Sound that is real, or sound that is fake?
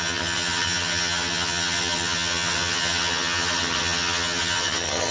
fake